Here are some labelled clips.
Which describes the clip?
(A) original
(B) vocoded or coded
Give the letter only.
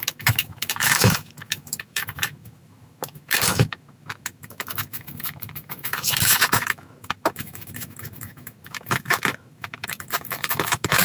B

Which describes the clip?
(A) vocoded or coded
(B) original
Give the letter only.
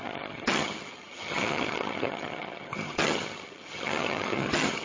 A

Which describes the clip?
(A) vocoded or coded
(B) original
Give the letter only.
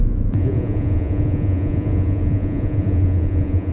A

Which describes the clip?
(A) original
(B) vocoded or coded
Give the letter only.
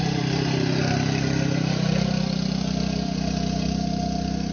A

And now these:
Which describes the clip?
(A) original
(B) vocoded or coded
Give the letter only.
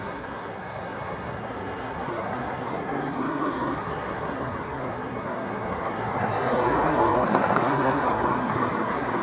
B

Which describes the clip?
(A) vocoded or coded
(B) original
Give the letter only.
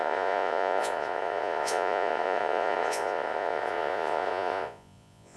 A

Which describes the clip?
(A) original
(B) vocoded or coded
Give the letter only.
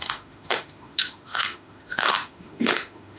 B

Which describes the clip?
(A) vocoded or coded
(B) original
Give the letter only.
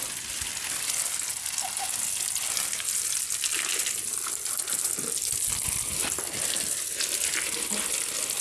B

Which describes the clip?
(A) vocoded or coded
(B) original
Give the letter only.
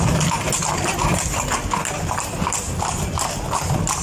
B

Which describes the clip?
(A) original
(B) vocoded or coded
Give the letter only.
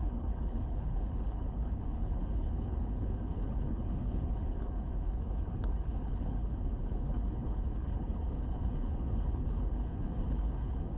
B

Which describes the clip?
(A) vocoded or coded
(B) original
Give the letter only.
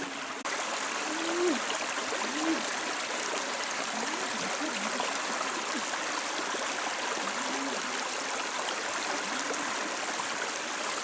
B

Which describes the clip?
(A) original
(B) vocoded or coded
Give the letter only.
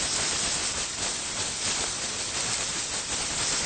A